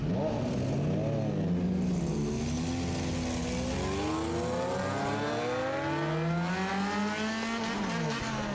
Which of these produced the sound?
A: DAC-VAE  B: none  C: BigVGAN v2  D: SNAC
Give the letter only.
B